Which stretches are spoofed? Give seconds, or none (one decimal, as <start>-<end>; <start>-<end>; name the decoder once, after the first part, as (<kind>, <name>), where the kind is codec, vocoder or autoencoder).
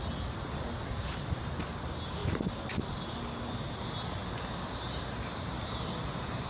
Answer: 2.2-2.8 (vocoder, BigVGAN v2)